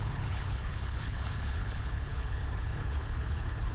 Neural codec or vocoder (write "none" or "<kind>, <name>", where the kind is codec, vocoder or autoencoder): codec, HILCodec